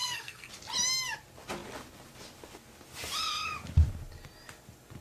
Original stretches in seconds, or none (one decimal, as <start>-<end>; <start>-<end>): 0.5-5.0